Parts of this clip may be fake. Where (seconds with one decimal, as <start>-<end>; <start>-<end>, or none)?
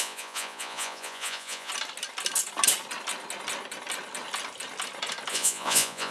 0.0-1.7; 5.3-6.1